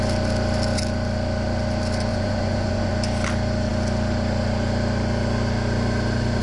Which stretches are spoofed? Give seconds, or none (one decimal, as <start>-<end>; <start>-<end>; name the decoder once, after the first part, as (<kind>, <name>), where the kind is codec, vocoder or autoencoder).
2.1-2.9 (vocoder, Vocos)